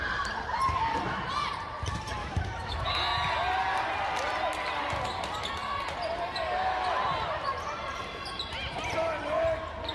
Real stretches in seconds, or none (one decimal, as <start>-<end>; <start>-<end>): 0.0-2.2; 2.8-9.9